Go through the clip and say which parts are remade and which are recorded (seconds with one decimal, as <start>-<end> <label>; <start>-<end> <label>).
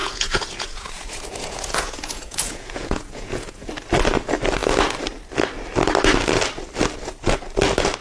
0.0-3.7 remade; 3.7-8.0 recorded